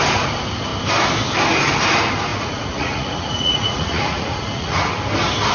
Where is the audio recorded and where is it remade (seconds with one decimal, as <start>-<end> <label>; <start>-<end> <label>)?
0.0-2.3 recorded; 2.3-4.9 remade; 4.9-5.5 recorded